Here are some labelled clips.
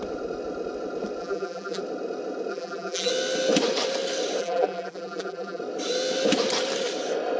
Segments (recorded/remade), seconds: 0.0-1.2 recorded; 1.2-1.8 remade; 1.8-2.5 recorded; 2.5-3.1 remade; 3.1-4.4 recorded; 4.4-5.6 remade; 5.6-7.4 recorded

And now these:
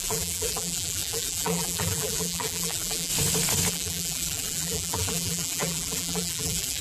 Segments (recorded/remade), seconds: 0.0-3.1 remade; 3.1-3.7 recorded; 3.7-6.8 remade

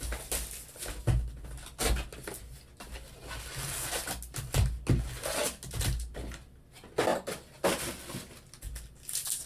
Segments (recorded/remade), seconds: 0.0-9.5 recorded

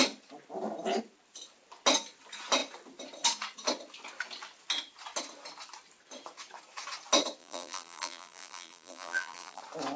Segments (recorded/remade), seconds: 0.0-7.4 recorded; 7.4-9.6 remade; 9.6-10.0 recorded

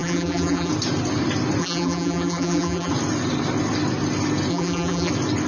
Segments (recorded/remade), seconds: 0.0-0.7 remade; 0.7-1.6 recorded; 1.6-2.9 remade; 2.9-4.5 recorded; 4.5-5.1 remade; 5.1-5.5 recorded